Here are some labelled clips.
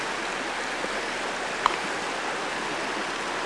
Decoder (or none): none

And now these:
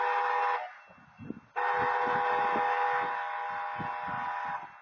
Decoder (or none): none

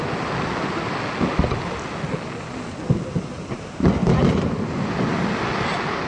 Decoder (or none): none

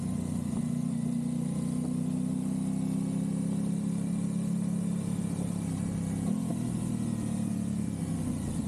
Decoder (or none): none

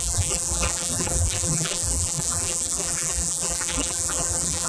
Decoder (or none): vocoder, BigVGAN v2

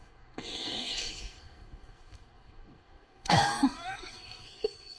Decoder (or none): codec, SNAC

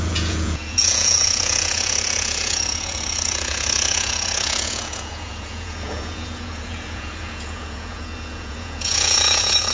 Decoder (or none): vocoder, Vocos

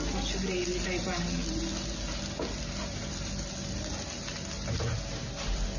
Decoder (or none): none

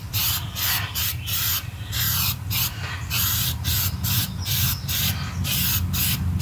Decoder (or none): none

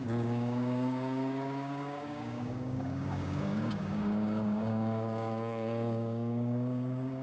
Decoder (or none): codec, DAC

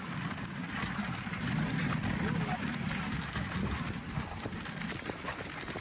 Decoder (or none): none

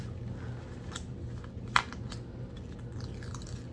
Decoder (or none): none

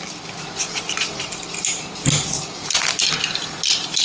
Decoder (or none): none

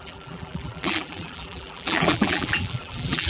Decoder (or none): vocoder, BigVGAN v2